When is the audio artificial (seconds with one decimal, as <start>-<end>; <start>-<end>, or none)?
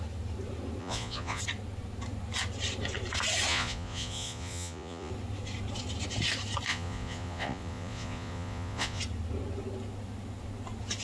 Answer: 0.8-1.4; 3.5-5.1; 6.7-9.0